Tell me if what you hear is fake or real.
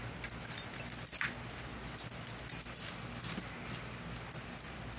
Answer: real